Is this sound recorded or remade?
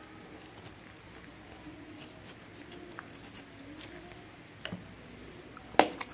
recorded